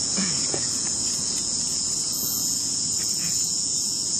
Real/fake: fake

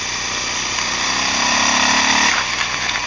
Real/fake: real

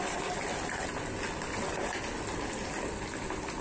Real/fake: real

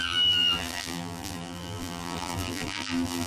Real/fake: fake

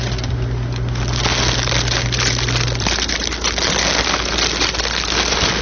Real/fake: real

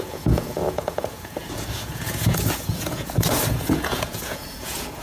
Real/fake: fake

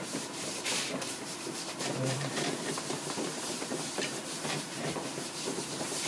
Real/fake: fake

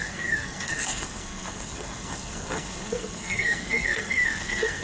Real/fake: fake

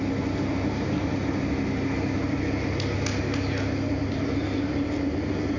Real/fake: real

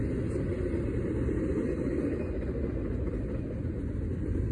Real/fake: real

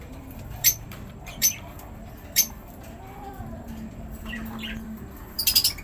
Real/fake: fake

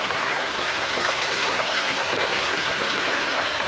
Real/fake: fake